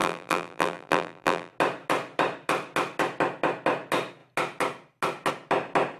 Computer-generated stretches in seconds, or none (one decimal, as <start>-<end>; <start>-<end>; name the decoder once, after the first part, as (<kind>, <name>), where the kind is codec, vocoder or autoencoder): 0.0-1.5 (vocoder, BigVGAN v2)